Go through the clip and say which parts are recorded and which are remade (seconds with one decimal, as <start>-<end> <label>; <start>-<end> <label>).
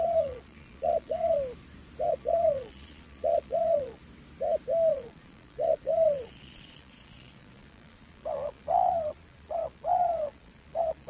0.0-1.4 remade; 1.4-2.1 recorded; 2.1-4.0 remade; 4.0-4.9 recorded; 4.9-11.1 remade